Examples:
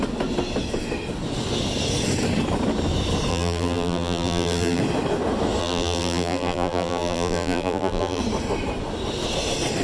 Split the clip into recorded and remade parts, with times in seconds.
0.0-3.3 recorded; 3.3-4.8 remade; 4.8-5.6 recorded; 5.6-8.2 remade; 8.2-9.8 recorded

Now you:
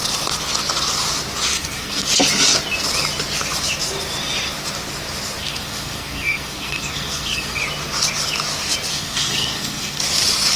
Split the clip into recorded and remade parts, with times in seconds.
0.0-1.5 recorded; 1.5-2.1 remade; 2.1-5.4 recorded; 5.4-7.6 remade; 7.6-8.9 recorded; 8.9-10.0 remade; 10.0-10.6 recorded

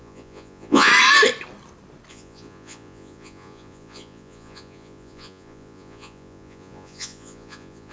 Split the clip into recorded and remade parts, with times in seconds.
0.0-0.9 remade; 0.9-2.1 recorded; 2.1-7.9 remade

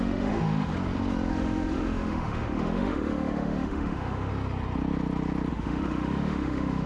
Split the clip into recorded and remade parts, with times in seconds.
0.0-0.7 remade; 0.7-1.3 recorded; 1.3-4.3 remade; 4.3-5.5 recorded; 5.5-6.9 remade